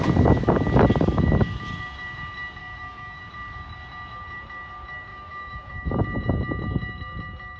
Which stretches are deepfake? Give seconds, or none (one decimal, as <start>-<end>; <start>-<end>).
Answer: 2.6-3.2; 5.1-5.9